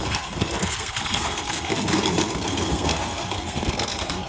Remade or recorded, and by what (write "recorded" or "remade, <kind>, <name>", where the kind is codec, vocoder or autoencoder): remade, codec, SNAC